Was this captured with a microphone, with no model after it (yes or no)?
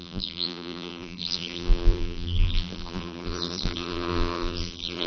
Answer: no